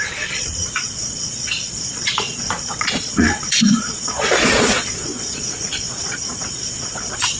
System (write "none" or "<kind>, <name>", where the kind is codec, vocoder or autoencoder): vocoder, Vocos